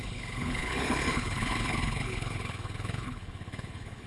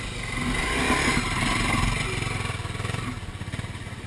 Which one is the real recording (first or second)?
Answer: second